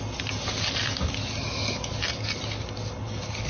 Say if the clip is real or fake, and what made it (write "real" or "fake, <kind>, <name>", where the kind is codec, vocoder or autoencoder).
real